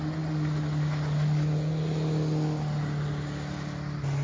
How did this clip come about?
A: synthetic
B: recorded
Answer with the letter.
B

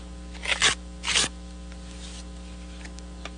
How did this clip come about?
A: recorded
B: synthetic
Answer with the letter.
A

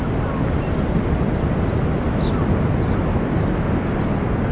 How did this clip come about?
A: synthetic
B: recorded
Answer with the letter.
B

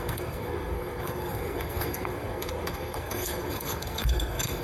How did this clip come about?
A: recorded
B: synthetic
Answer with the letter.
B